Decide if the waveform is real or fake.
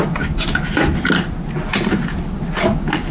real